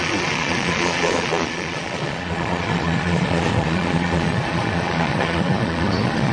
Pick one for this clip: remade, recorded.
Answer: remade